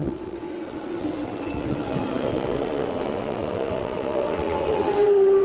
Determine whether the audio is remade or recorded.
remade